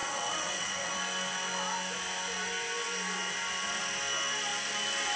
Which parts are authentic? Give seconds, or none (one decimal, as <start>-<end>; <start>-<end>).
0.9-5.2